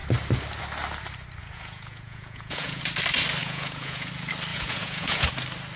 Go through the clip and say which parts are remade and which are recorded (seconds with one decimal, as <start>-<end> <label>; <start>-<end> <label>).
0.0-1.4 recorded; 1.4-2.8 remade; 2.8-3.4 recorded; 3.4-4.1 remade; 4.1-4.5 recorded; 4.5-5.3 remade; 5.3-5.8 recorded